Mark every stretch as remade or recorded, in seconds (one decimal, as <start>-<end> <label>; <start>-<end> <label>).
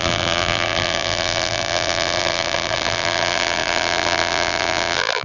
0.0-5.2 remade